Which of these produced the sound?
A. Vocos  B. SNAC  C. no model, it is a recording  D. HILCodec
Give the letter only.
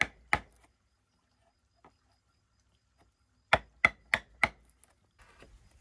C